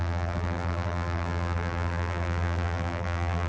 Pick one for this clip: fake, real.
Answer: fake